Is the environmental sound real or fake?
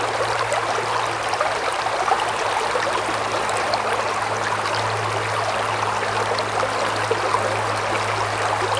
real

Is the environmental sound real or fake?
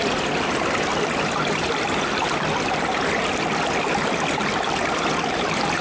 real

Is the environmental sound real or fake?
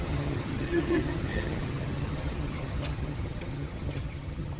fake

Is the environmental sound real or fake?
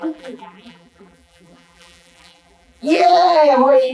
fake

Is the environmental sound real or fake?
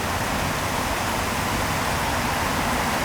real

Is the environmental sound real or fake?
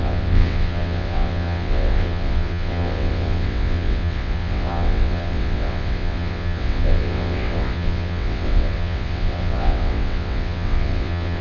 fake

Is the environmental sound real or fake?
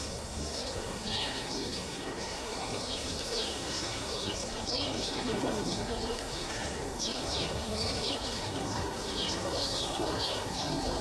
fake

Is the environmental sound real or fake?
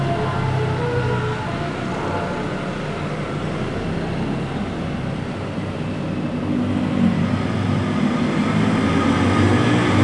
real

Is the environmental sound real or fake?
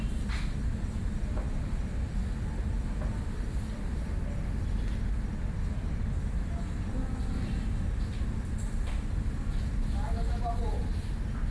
real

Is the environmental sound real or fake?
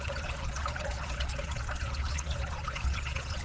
fake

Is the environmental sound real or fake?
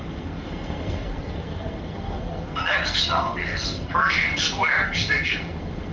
fake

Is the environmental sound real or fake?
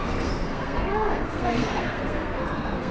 fake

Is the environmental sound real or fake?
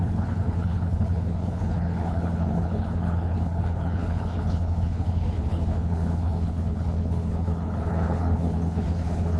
fake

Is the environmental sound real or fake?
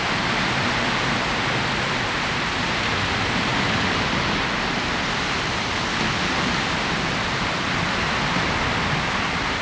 real